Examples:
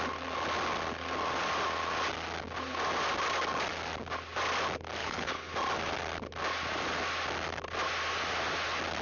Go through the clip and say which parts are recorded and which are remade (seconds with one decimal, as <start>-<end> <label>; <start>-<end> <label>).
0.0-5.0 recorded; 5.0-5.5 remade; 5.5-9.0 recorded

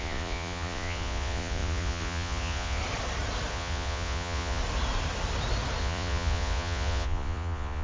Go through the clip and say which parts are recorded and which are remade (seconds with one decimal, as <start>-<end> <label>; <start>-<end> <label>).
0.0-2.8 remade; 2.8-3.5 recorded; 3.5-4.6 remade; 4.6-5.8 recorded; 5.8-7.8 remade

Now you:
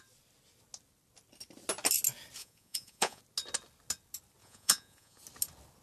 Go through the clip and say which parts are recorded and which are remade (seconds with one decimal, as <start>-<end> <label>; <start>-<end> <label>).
0.0-2.4 recorded; 2.4-3.2 remade; 3.2-4.4 recorded; 4.4-5.2 remade; 5.2-5.8 recorded

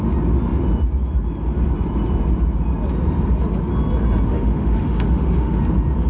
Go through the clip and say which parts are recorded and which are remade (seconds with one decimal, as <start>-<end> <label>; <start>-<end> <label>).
0.0-4.3 recorded; 4.3-5.6 remade; 5.6-6.1 recorded